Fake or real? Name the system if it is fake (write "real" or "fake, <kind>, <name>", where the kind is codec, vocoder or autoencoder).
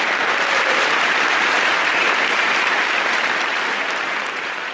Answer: fake, vocoder, BigVGAN v2